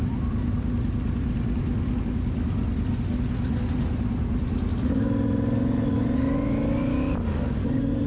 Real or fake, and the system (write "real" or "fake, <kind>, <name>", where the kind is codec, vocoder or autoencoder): real